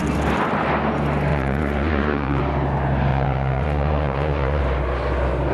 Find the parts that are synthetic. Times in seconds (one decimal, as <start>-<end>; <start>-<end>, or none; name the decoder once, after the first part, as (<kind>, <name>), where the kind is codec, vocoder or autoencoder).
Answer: 1.3-2.4 (vocoder, Vocos); 3.1-4.6